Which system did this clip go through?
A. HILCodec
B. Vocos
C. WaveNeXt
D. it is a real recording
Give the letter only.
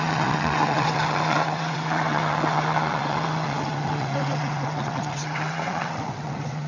C